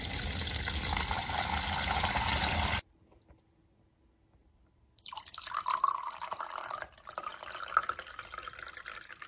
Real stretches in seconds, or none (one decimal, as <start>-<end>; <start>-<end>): 0.0-2.3; 3.7-4.4; 5.4-9.3